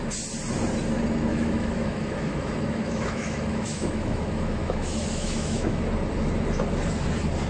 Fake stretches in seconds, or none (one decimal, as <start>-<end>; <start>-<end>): 1.3-5.8